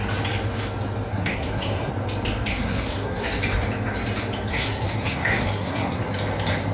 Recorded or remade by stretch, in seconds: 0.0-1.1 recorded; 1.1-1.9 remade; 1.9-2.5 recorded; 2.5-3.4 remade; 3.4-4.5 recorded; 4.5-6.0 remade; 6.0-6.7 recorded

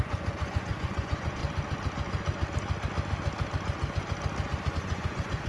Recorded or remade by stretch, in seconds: 0.0-1.4 remade; 1.4-4.7 recorded; 4.7-5.5 remade

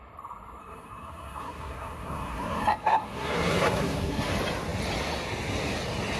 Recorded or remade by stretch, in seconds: 0.0-0.6 recorded; 0.6-4.3 remade; 4.3-6.2 recorded

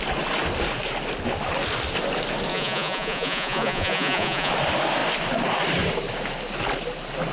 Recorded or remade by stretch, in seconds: 0.0-2.5 recorded; 2.5-4.5 remade; 4.5-7.3 recorded

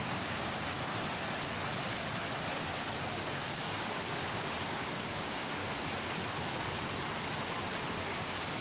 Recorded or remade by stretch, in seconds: 0.0-0.9 remade; 0.9-3.0 recorded; 3.0-5.6 remade; 5.6-7.9 recorded; 7.9-8.6 remade

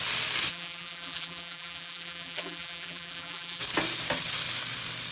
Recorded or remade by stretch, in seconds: 0.0-0.5 recorded; 0.5-3.6 remade; 3.6-5.1 recorded

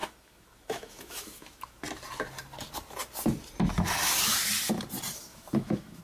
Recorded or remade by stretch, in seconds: 0.0-1.8 remade; 1.8-5.3 recorded; 5.3-6.0 remade

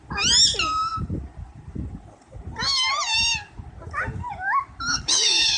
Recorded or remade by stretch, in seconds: 0.0-4.9 recorded; 4.9-5.6 remade